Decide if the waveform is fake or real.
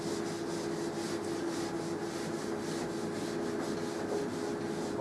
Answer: real